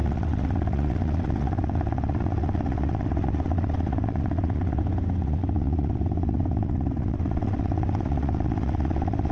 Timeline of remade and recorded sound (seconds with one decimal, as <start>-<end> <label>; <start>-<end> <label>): 0.0-4.8 remade; 4.8-5.2 recorded; 5.2-9.3 remade